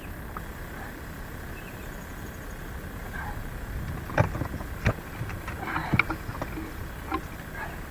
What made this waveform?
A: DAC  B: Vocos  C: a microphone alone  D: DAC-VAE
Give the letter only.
C